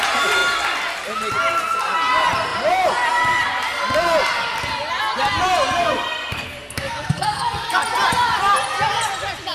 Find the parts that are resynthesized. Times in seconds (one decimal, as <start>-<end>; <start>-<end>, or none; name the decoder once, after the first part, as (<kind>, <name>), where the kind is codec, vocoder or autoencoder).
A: 5.8-7.8 (codec, SNAC)